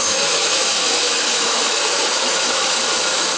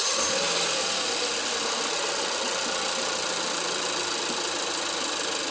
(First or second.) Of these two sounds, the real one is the second